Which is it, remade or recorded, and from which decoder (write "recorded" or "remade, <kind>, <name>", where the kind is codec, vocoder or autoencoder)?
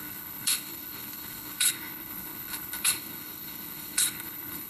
remade, codec, HILCodec